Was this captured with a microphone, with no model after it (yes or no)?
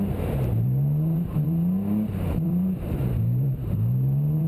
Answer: no